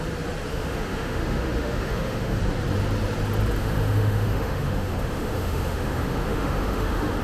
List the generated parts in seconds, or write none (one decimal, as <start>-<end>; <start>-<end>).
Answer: 0.5-2.4; 3.6-7.2